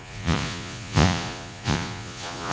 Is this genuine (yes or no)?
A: no